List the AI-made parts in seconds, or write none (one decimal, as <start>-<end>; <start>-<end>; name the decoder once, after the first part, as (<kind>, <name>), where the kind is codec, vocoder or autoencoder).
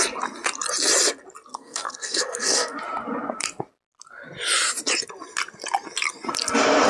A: 1.5-2.8 (codec, SNAC)